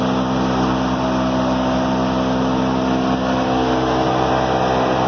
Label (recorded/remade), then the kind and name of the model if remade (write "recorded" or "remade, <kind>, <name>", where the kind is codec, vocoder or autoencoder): recorded